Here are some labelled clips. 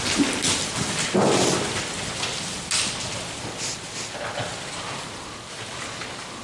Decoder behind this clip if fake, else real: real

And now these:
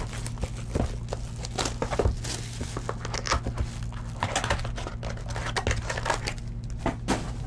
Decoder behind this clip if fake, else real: real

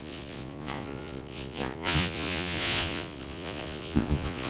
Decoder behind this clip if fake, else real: fake, vocoder, Vocos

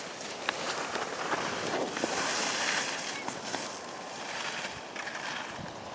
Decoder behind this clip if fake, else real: real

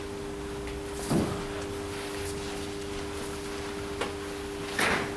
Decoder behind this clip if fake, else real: real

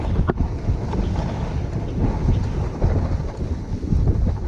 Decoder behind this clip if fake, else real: real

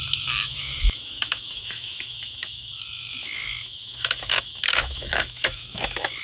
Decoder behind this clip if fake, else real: fake, autoencoder, DAC-VAE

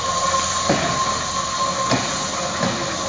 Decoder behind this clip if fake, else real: real